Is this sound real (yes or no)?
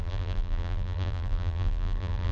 no